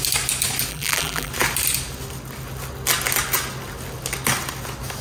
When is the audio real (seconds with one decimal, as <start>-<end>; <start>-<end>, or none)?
0.0-0.7; 1.3-5.0